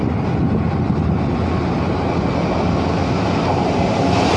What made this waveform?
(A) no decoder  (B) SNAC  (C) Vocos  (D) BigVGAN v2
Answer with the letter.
A